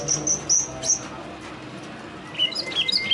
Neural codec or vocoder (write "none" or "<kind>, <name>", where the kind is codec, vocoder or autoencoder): none